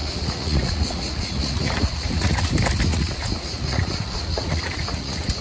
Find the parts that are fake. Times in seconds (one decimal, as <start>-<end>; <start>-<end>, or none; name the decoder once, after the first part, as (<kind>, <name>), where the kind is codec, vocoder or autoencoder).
0.0-2.5 (vocoder, Vocos); 2.9-5.4